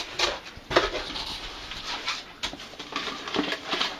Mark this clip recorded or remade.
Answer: recorded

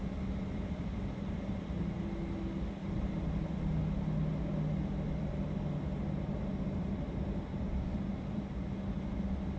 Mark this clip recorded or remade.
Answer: recorded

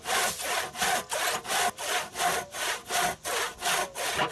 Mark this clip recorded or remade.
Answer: recorded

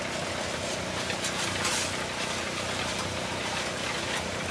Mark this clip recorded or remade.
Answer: recorded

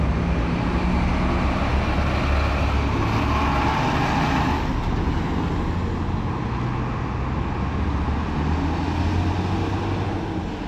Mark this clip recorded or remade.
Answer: recorded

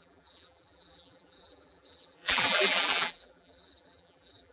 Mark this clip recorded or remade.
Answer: remade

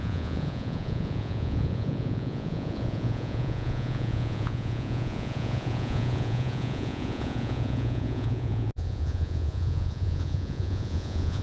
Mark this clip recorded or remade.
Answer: remade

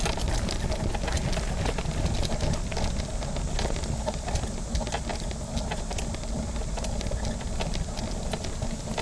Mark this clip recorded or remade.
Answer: recorded